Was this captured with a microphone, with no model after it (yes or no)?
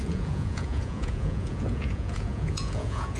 no